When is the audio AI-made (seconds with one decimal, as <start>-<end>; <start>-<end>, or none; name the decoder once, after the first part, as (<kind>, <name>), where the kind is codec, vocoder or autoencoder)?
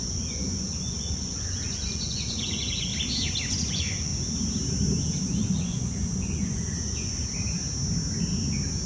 0.0-2.9 (vocoder, Vocos); 3.5-4.1; 5.0-7.2